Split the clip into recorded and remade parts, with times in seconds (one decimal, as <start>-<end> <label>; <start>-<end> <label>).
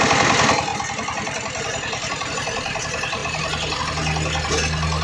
0.0-5.0 recorded